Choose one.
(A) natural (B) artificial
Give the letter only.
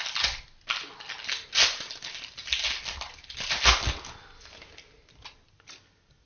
A